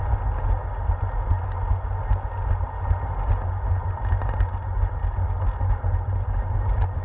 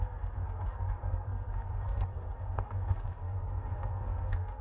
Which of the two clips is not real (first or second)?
second